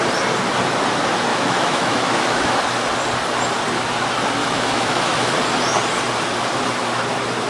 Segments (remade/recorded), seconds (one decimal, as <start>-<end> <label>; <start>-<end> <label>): 0.0-1.3 recorded; 1.3-2.5 remade; 2.5-4.4 recorded; 4.4-5.3 remade; 5.3-7.5 recorded